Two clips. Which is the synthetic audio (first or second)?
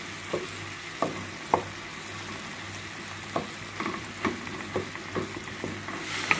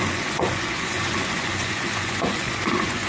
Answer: second